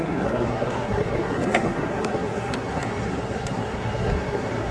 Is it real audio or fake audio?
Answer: fake